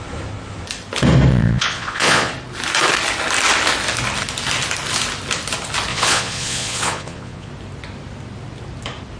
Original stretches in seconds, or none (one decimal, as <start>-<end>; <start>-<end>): 0.0-1.3; 2.3-5.9; 7.5-9.2